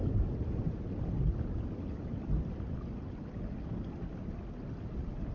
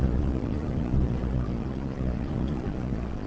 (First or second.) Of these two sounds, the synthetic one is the second